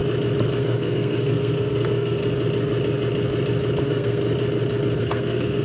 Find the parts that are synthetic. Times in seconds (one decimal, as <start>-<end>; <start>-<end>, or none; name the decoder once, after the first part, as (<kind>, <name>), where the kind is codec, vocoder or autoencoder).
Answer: 0.6-2.2 (codec, SNAC); 3.8-4.2; 5.0-5.6